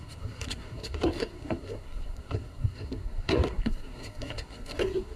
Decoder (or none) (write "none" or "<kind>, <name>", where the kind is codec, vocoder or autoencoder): codec, SNAC